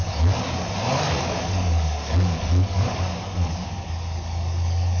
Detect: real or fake fake